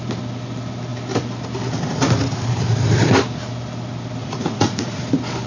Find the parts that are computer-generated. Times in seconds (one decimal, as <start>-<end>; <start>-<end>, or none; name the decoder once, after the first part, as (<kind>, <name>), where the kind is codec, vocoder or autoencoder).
4.2-5.0 (vocoder, Vocos)